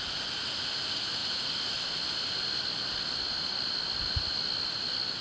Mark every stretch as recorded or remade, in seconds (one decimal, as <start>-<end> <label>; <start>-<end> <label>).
0.0-5.2 recorded